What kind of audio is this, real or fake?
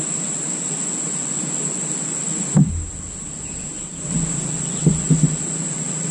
real